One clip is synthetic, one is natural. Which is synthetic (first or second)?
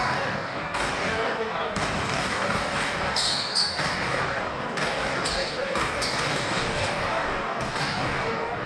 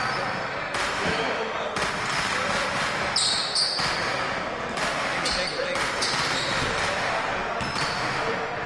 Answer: first